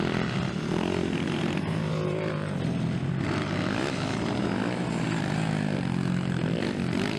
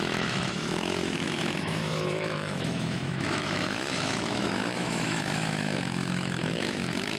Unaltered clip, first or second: first